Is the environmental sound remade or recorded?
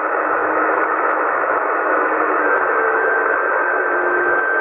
remade